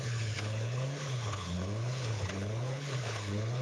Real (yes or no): no